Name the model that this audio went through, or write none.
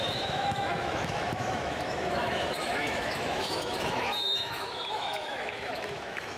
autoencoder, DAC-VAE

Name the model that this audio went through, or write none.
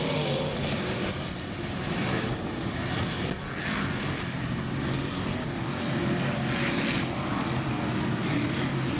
none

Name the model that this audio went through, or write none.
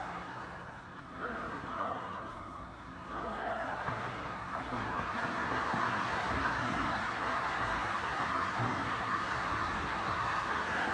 codec, SNAC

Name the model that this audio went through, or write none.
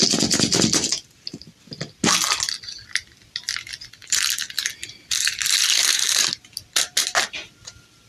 none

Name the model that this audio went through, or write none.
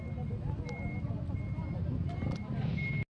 none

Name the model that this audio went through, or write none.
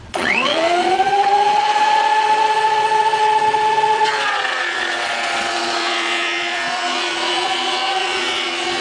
vocoder, Vocos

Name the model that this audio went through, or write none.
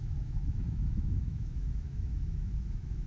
autoencoder, DAC-VAE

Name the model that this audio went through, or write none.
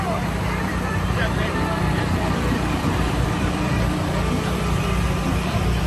vocoder, BigVGAN v2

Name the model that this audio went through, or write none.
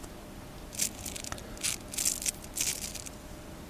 none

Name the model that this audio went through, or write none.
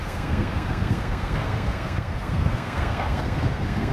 codec, SNAC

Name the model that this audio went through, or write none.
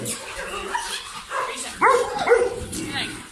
none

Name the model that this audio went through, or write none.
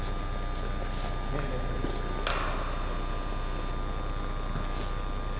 none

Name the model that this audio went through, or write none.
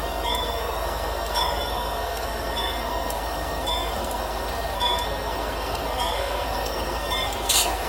codec, SNAC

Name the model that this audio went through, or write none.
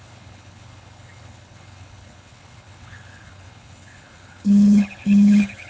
codec, HILCodec